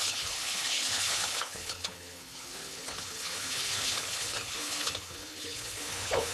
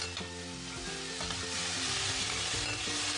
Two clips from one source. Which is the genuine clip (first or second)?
second